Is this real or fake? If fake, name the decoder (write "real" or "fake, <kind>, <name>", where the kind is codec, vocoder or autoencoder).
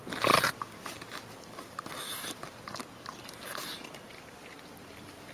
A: real